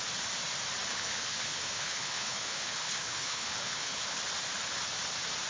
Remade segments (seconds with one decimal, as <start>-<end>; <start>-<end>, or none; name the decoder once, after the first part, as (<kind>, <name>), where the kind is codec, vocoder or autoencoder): 0.9-4.2 (codec, HILCodec)